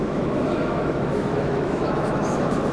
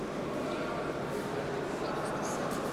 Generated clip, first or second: first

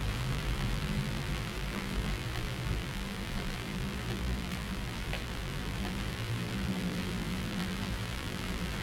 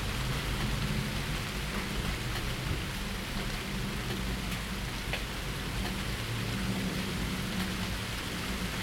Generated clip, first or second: first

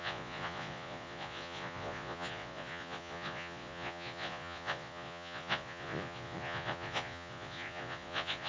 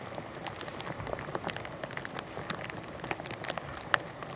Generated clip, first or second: first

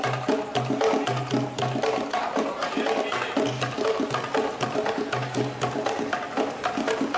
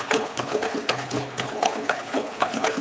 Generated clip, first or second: second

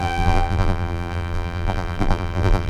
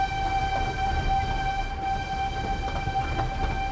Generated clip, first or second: first